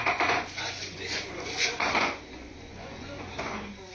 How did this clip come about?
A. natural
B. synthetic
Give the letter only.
B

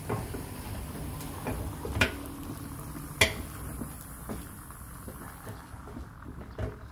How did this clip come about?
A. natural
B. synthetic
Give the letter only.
A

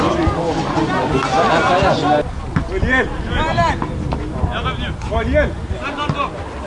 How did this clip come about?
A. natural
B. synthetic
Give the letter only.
A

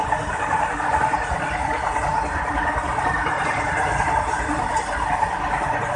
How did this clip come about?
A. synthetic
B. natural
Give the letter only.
B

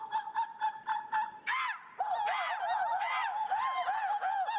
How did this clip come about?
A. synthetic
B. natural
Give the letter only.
B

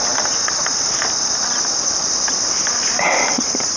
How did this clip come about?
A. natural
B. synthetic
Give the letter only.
A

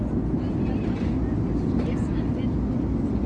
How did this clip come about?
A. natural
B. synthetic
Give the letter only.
A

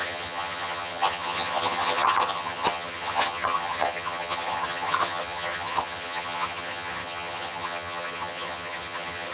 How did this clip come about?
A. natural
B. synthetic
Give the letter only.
B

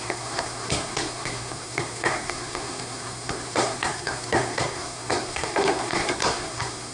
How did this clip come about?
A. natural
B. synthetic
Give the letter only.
B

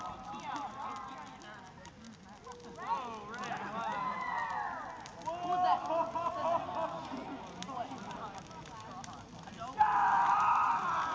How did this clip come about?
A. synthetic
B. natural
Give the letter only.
B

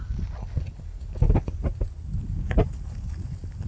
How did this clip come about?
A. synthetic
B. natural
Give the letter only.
B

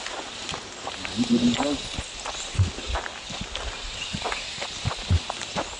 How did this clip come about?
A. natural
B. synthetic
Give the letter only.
A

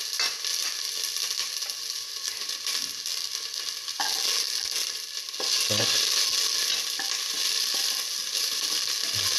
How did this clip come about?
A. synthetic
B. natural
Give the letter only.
B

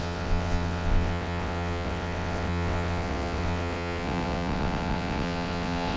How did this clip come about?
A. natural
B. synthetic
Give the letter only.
B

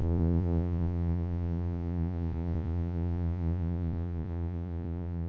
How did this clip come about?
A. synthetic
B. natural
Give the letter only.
A